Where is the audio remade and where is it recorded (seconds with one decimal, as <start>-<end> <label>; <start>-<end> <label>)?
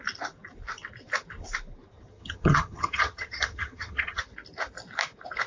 0.0-2.1 recorded; 2.1-4.2 remade; 4.2-5.5 recorded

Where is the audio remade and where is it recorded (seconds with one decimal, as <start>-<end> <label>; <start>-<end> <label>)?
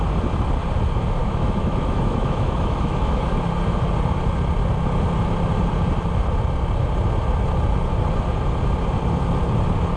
0.0-1.2 recorded; 1.2-3.4 remade; 3.4-10.0 recorded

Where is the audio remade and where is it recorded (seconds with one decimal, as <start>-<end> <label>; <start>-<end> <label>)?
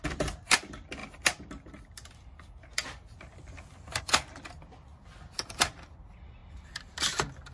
0.0-7.5 recorded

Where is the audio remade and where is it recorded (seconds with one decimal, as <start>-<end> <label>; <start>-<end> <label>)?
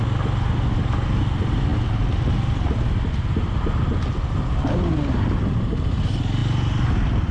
0.0-7.3 recorded